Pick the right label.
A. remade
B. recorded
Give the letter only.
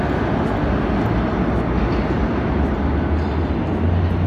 B